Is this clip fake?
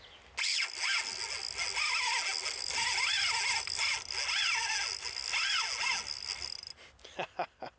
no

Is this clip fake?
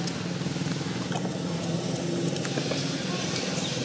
no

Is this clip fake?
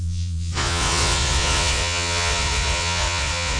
yes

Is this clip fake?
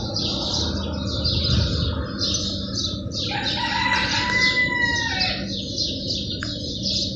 no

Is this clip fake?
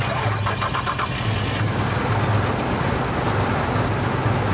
no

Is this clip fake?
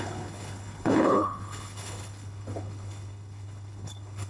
yes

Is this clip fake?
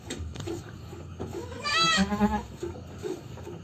yes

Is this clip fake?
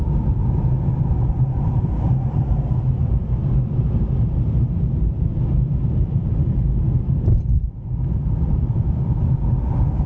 yes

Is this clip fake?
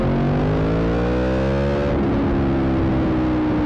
no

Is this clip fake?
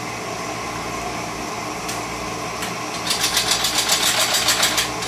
no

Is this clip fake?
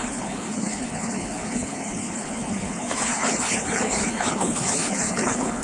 yes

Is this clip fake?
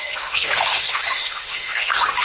yes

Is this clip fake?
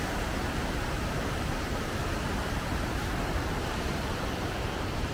yes